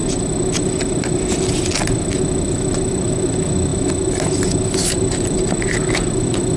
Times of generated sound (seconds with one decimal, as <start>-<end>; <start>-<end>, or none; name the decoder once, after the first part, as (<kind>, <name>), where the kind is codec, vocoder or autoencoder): none